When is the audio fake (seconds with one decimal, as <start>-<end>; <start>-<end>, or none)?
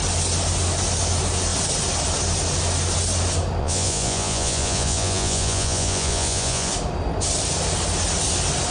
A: 3.6-6.7